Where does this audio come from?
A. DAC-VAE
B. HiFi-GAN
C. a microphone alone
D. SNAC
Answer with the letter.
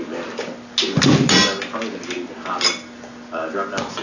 C